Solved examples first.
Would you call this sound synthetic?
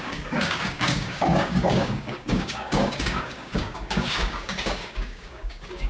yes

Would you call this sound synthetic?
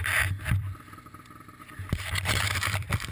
yes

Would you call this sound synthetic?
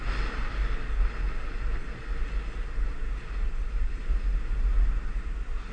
no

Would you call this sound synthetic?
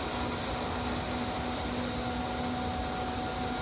no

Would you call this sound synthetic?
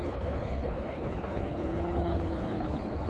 yes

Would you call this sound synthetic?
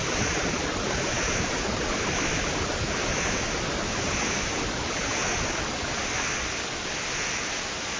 yes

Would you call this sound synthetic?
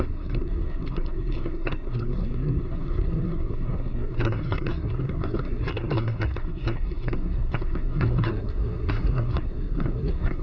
yes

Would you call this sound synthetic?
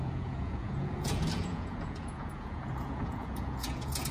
yes